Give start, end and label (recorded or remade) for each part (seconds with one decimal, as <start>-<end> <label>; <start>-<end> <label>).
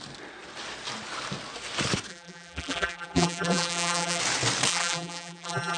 0.0-2.1 recorded; 2.1-4.2 remade; 4.2-4.7 recorded; 4.7-5.8 remade